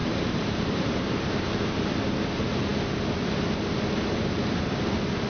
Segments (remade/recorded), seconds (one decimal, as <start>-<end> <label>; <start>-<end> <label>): 0.0-1.7 remade; 1.7-5.3 recorded